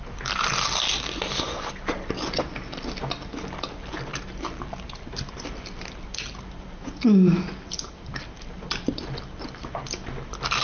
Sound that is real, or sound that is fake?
real